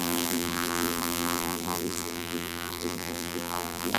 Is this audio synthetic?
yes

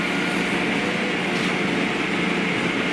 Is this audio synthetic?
no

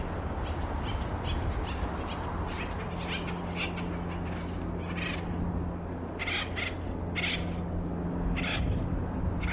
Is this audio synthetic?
no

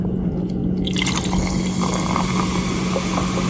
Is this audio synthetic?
no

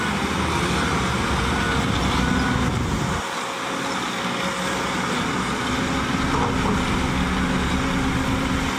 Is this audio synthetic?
no